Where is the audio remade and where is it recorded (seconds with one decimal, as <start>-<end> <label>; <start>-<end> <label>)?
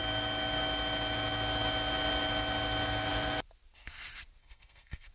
0.0-4.4 recorded; 4.4-5.1 remade